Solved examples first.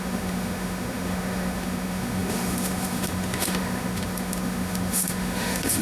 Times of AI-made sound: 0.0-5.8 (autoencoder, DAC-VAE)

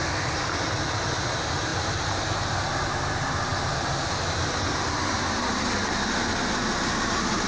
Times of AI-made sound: 1.7-2.6 (vocoder, BigVGAN v2)

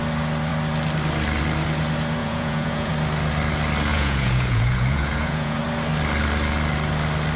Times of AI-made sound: 2.2-2.9 (vocoder, Vocos); 3.9-5.6